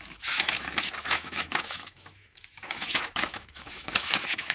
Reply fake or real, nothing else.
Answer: fake